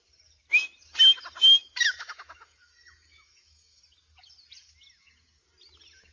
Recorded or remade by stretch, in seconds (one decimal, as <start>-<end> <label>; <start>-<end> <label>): 0.0-1.6 recorded; 1.6-3.8 remade; 3.8-6.1 recorded